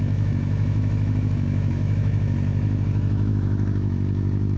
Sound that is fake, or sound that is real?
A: fake